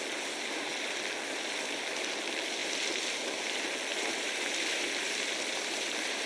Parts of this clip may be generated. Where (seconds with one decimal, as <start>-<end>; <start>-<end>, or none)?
2.6-3.2; 3.9-6.3